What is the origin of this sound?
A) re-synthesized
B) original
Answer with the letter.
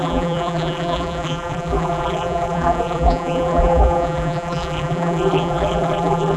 A